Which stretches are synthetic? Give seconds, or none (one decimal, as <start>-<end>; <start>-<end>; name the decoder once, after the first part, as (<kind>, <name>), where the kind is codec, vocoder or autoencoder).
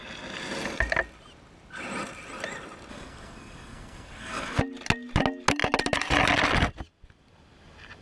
2.9-4.6 (codec, SNAC)